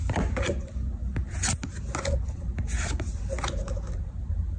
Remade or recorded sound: recorded